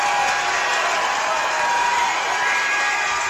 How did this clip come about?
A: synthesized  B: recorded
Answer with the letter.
B